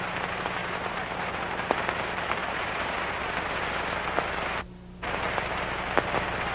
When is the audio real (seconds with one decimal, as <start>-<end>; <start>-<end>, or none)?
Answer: 0.0-0.6; 1.3-2.4; 3.0-6.5